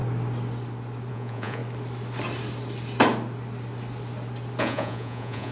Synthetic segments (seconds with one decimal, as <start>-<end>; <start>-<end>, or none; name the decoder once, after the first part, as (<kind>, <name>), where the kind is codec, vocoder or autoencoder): 1.1-1.6 (vocoder, Vocos); 4.6-5.5